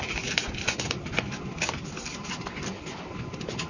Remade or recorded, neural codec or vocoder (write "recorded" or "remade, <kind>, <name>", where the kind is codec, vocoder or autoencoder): recorded